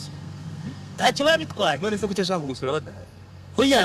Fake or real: fake